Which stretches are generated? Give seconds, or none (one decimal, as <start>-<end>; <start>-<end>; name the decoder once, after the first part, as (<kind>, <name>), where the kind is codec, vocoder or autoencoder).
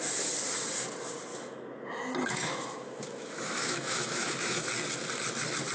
1.3-4.7 (autoencoder, DAC-VAE)